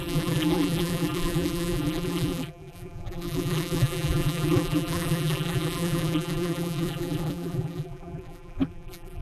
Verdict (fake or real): fake